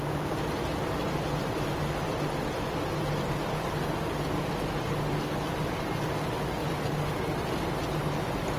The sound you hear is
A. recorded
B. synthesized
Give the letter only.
A